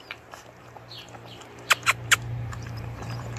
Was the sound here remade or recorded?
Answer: remade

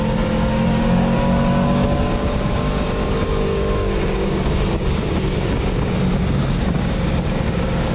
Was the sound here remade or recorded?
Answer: remade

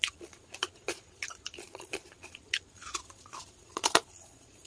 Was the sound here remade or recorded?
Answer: remade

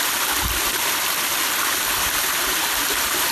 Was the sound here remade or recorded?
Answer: recorded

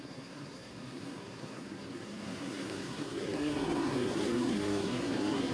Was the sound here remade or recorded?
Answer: remade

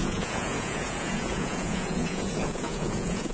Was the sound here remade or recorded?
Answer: remade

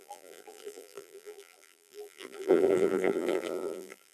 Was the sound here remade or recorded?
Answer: remade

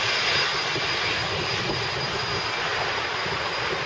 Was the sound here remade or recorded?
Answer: recorded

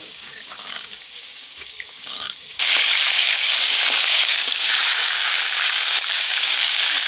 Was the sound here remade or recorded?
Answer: remade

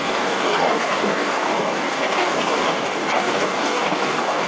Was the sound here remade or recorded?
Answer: remade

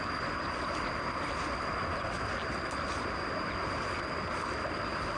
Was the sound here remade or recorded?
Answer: recorded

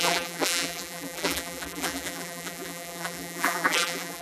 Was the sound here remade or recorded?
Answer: remade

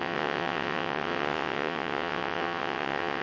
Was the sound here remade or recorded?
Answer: remade